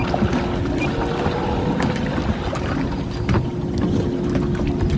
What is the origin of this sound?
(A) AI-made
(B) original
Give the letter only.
B